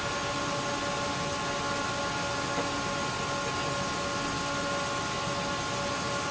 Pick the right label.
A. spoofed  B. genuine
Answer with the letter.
B